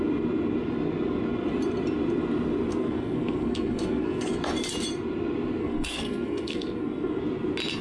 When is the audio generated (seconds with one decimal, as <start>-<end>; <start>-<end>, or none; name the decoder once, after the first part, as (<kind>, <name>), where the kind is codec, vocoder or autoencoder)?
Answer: 2.7-4.4 (codec, SNAC); 5.6-7.2